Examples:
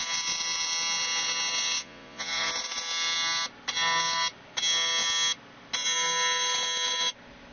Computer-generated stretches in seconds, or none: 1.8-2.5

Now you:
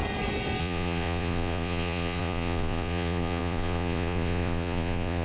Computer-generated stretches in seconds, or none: 0.6-5.2

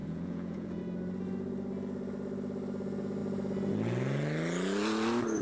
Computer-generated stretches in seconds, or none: 0.0-0.8

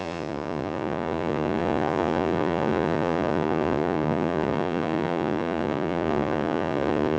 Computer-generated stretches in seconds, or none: 0.0-7.2